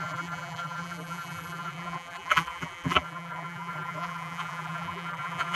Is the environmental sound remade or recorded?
remade